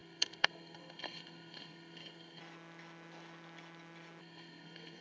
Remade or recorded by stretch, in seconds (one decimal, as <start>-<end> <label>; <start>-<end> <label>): 0.0-2.4 remade; 2.4-4.2 recorded; 4.2-5.0 remade